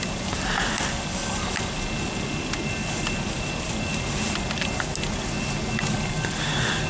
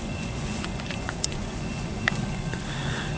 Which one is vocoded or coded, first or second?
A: second